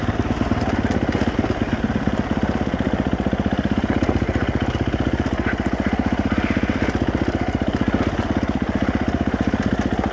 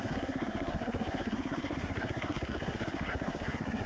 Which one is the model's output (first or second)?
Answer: second